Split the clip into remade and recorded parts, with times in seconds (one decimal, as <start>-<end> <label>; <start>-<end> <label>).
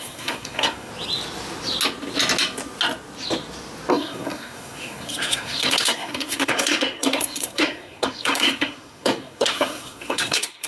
0.0-0.9 remade; 0.9-3.9 recorded; 3.9-10.7 remade